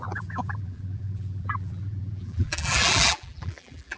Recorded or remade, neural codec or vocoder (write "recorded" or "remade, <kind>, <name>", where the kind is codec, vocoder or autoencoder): remade, vocoder, BigVGAN v2